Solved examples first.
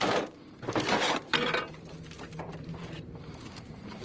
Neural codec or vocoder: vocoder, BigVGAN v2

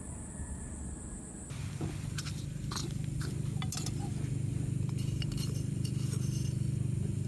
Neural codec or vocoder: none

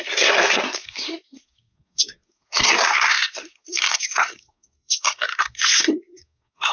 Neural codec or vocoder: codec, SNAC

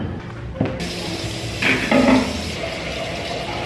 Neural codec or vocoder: none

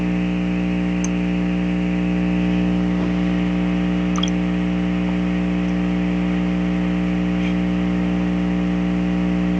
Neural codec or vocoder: none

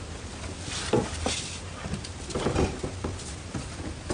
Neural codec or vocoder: none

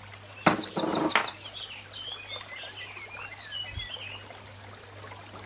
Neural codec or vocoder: none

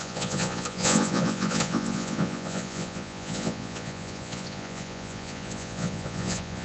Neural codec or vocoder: vocoder, Vocos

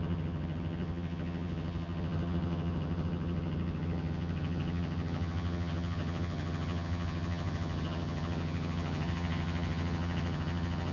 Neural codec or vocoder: vocoder, HiFi-GAN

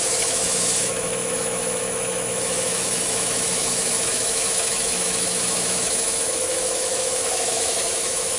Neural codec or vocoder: autoencoder, DAC-VAE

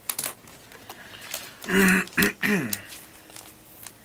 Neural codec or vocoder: none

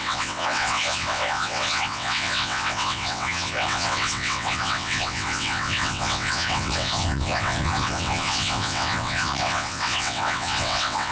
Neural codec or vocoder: vocoder, WaveNeXt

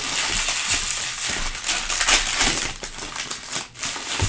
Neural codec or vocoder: none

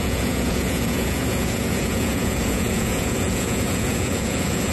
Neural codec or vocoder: vocoder, Vocos